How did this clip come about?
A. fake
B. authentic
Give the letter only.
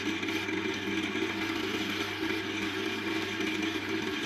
B